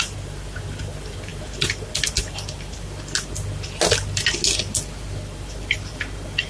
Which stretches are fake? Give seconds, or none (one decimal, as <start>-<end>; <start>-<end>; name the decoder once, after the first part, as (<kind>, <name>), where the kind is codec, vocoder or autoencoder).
none

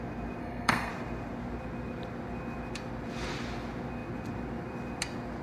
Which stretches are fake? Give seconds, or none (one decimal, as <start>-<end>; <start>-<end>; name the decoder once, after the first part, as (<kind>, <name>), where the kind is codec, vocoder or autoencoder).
0.4-0.9 (codec, SNAC)

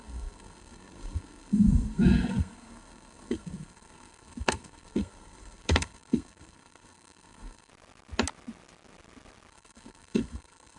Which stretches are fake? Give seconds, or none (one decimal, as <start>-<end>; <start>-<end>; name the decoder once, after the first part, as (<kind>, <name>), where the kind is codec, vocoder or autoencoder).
0.0-7.7 (codec, SNAC); 9.5-10.8

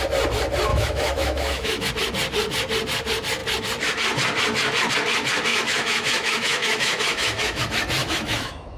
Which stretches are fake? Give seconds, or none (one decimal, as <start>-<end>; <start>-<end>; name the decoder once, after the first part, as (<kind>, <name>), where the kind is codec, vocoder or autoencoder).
0.7-1.9 (autoencoder, DAC-VAE); 5.5-7.6; 8.0-8.8

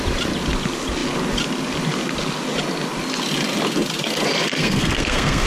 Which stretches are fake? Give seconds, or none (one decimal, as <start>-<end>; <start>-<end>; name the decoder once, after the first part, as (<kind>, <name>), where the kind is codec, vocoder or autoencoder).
4.6-5.5 (codec, SNAC)

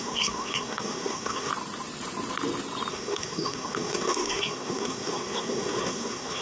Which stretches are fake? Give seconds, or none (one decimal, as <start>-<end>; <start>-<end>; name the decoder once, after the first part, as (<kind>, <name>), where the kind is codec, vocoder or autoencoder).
0.0-1.5 (codec, SNAC); 2.9-6.4